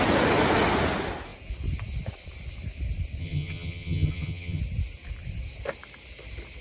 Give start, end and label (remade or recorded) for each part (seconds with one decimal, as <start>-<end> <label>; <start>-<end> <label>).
0.0-3.2 recorded; 3.2-4.6 remade; 4.6-6.6 recorded